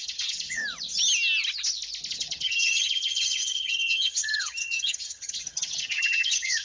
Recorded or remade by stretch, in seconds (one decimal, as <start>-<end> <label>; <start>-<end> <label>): 0.0-0.6 remade; 0.6-2.1 recorded; 2.1-6.6 remade